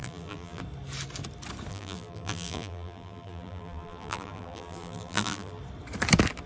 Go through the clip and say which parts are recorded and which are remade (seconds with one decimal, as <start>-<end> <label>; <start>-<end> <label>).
0.0-0.6 remade; 0.6-1.7 recorded; 1.7-5.6 remade; 5.6-6.5 recorded